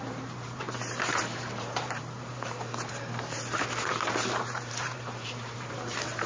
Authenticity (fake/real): fake